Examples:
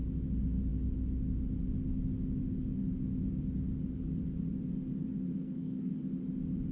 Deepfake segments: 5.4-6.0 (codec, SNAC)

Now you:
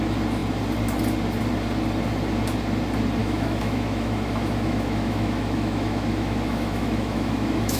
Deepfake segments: 3.2-7.8 (autoencoder, DAC-VAE)

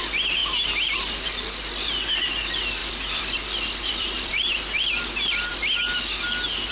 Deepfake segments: 2.8-4.3 (vocoder, BigVGAN v2)

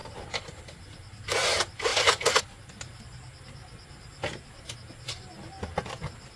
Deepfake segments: 0.0-0.6 (vocoder, BigVGAN v2); 1.9-3.0

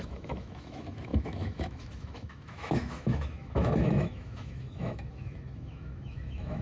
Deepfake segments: 0.0-6.6 (autoencoder, DAC-VAE)

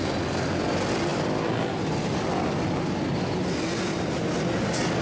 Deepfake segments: none

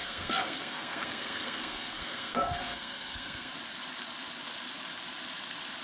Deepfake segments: 0.0-3.5 (codec, SNAC)

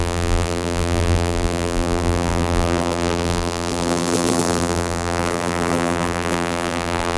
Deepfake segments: 0.0-7.2 (vocoder, BigVGAN v2)